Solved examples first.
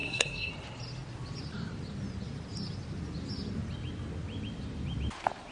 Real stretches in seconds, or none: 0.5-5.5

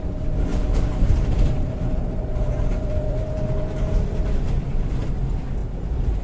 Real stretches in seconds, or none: 0.0-0.5; 4.2-5.6